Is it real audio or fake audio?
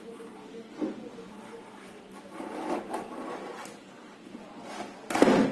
real